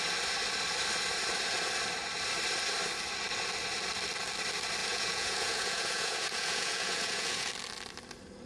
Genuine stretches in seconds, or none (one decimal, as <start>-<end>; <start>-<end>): 0.0-4.8; 7.5-8.5